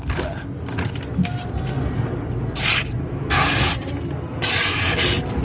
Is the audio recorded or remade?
recorded